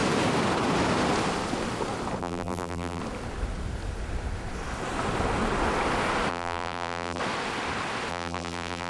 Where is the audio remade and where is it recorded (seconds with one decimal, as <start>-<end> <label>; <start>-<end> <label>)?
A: 0.0-2.2 recorded; 2.2-3.0 remade; 3.0-6.3 recorded; 6.3-7.2 remade; 7.2-8.1 recorded; 8.1-8.9 remade